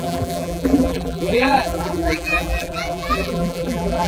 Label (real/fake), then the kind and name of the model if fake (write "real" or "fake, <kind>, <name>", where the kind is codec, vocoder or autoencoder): fake, vocoder, BigVGAN v2